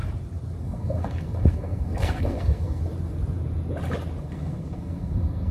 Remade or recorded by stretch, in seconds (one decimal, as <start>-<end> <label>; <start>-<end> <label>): 0.0-0.6 recorded; 0.6-2.8 remade; 2.8-4.2 recorded; 4.2-5.5 remade